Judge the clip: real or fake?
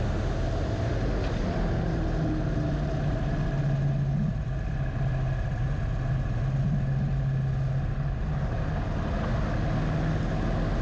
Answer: real